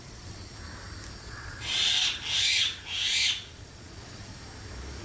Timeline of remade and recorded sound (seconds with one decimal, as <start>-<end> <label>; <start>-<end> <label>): 0.0-0.5 remade; 0.5-1.2 recorded; 1.2-1.8 remade; 1.8-3.5 recorded; 3.5-4.3 remade; 4.3-5.0 recorded